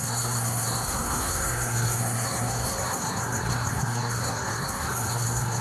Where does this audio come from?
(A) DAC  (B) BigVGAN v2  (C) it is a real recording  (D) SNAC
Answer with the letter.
D